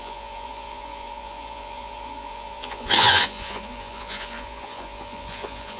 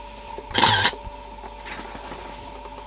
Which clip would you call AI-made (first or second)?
first